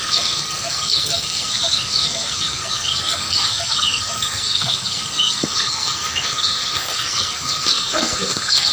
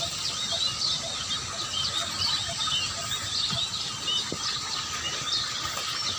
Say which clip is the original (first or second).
second